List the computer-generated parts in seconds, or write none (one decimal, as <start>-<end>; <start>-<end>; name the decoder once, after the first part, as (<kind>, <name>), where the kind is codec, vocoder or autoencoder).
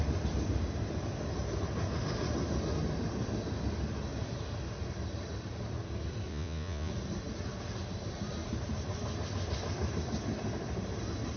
6.3-6.9 (vocoder, Vocos)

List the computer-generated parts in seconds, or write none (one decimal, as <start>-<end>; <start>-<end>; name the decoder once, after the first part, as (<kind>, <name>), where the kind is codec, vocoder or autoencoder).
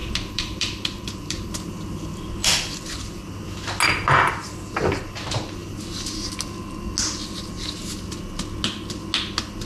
0.0-1.7 (vocoder, BigVGAN v2); 2.4-3.3